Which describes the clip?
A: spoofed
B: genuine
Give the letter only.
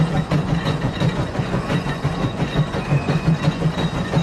A